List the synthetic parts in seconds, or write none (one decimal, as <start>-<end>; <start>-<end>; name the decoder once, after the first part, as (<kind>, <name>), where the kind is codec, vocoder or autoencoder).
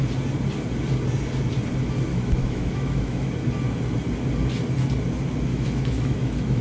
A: 2.1-3.3 (autoencoder, DAC-VAE); 5.5-6.6